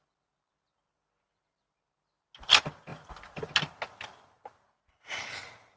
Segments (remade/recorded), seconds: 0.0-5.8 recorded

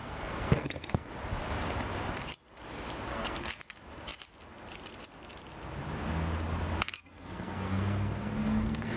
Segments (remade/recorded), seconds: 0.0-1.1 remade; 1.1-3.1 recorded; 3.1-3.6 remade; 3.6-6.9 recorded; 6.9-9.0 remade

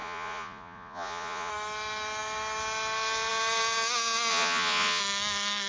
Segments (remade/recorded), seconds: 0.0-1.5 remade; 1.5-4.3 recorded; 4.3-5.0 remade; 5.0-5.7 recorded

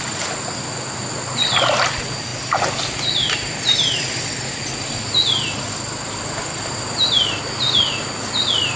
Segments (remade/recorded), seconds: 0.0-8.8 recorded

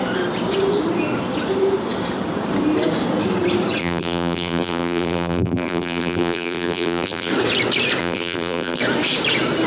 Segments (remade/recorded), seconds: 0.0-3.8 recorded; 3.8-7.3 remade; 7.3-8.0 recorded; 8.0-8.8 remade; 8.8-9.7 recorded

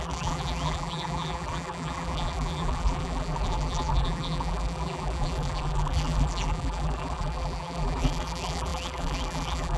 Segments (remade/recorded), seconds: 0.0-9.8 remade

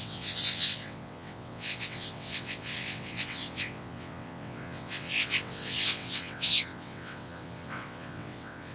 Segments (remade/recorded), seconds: 0.0-8.7 remade